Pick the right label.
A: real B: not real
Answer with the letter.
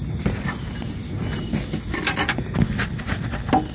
A